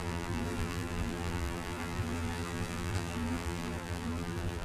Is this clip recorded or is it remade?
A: remade